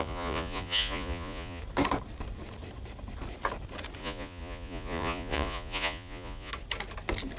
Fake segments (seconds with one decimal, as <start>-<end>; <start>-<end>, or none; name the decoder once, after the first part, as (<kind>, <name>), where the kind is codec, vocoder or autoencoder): 0.0-1.6 (vocoder, Vocos); 4.0-6.5